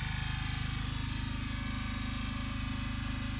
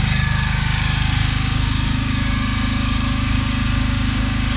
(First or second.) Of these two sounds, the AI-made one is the second